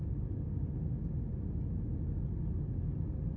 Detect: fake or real real